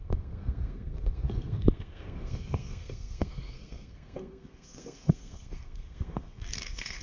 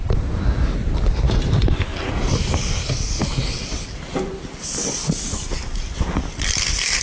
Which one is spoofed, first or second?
first